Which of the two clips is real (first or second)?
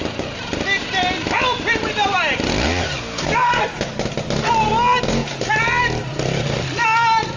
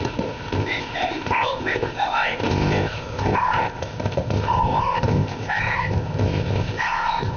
first